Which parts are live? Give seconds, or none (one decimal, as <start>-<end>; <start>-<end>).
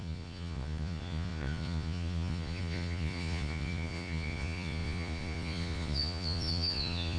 none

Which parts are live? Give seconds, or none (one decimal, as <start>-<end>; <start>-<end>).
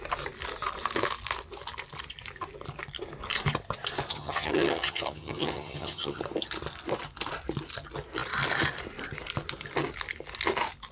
0.0-4.1; 6.2-10.9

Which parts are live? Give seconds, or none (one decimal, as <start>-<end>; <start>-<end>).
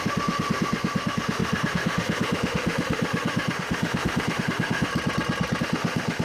4.9-5.6